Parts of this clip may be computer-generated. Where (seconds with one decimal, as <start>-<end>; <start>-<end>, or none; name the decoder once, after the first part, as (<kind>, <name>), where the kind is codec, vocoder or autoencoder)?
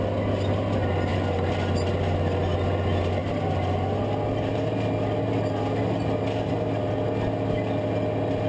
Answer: none